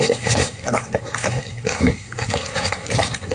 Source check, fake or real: fake